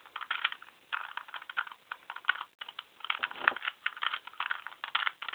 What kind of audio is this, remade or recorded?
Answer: recorded